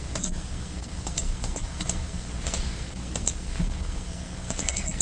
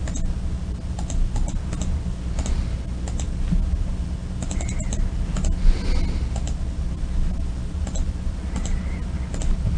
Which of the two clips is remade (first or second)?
first